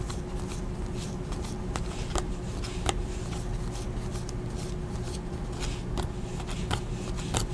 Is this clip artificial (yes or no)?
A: no